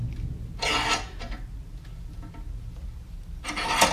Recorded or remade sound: recorded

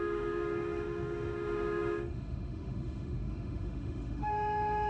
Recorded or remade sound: remade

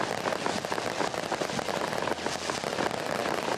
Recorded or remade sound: recorded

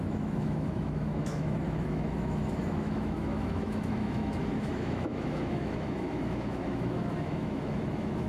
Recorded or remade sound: remade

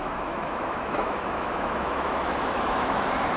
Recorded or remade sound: remade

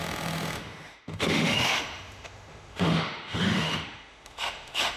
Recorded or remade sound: remade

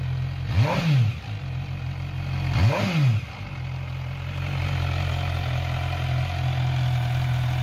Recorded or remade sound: recorded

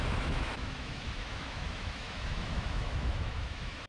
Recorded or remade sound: remade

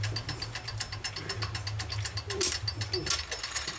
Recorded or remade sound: recorded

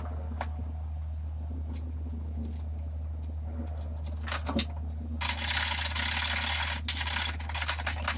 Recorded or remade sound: recorded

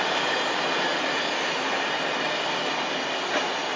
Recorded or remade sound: recorded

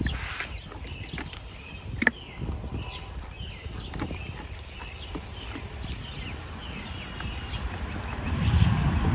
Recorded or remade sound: recorded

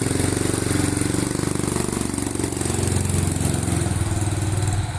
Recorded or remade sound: recorded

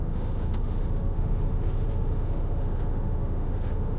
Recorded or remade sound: remade